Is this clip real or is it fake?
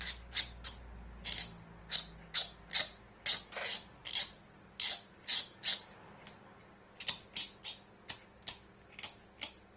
real